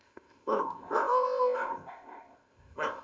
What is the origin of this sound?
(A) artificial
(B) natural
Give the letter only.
A